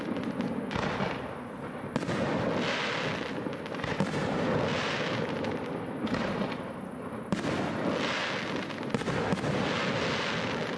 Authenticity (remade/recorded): recorded